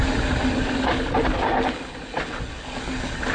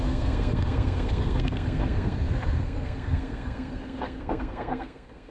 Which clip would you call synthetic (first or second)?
second